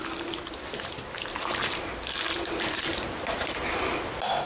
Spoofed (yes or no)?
no